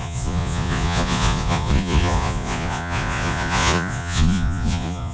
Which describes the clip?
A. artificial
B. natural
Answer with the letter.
A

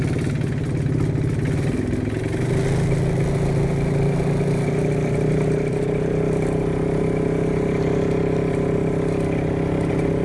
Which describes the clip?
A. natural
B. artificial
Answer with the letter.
A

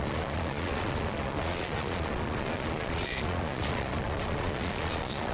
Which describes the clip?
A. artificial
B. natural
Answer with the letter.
A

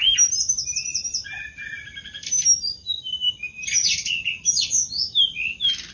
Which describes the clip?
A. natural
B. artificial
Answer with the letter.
A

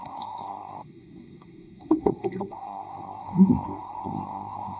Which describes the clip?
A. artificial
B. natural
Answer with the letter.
A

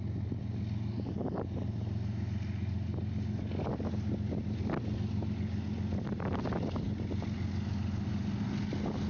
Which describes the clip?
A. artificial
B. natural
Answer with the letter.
B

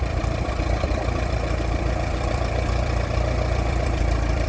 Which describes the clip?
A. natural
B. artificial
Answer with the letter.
B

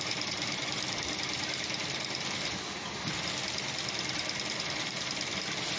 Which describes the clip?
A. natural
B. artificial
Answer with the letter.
A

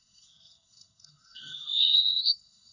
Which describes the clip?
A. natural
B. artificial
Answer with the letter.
B